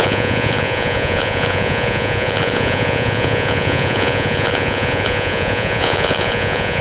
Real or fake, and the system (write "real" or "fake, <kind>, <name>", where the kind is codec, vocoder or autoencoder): fake, vocoder, Vocos